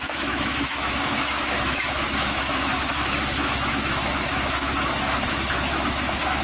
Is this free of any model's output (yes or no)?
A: no